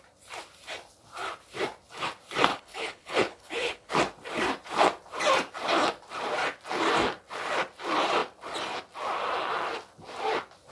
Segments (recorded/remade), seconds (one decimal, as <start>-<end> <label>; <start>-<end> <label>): 0.0-2.5 recorded; 2.5-3.9 remade; 3.9-10.7 recorded